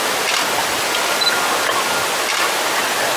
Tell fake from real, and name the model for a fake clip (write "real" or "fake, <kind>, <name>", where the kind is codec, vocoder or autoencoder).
real